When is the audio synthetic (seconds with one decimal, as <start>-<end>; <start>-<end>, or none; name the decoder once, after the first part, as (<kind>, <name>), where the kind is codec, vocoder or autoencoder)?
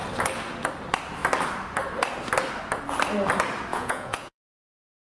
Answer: 3.7-4.4 (vocoder, Vocos)